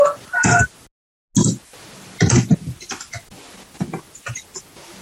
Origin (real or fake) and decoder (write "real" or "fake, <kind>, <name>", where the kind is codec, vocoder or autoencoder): real